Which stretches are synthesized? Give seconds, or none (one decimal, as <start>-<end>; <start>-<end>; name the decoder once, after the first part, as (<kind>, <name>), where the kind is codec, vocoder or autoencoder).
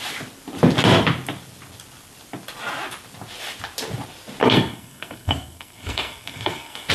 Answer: 4.4-6.9 (codec, SNAC)